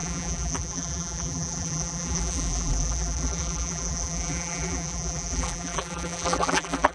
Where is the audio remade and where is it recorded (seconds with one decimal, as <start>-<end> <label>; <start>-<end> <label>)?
0.0-6.9 remade